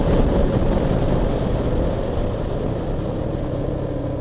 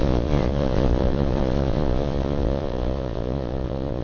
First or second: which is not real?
second